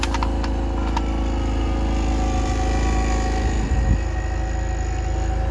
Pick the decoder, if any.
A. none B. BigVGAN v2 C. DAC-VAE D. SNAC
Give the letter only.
A